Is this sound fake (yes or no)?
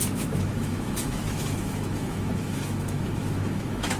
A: yes